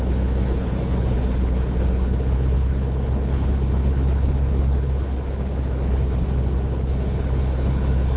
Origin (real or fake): fake